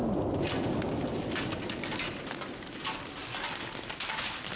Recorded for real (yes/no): yes